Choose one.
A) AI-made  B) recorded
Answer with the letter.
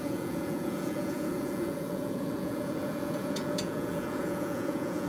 A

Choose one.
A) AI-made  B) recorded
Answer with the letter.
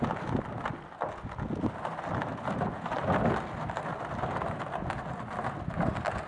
B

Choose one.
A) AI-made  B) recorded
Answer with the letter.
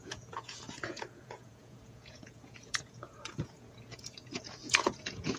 A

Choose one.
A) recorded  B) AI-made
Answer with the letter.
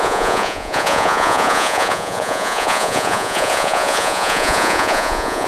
B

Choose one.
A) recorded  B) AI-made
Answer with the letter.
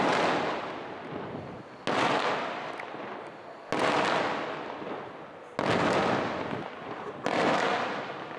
A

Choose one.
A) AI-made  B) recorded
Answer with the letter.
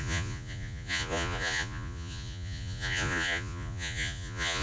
A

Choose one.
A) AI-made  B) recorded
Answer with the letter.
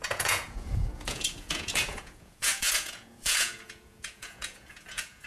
A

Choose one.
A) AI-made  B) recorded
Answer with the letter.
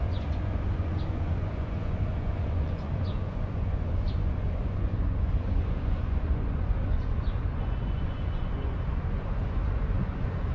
A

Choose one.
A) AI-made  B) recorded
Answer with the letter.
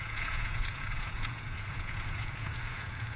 A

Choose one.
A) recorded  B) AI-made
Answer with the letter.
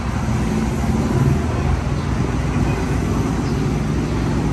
A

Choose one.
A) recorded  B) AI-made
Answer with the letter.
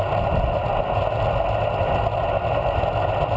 A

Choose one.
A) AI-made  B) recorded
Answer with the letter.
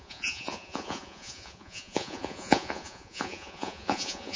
A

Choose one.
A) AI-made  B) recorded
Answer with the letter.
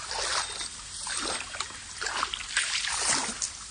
B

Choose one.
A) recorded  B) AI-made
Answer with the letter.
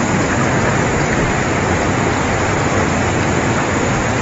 A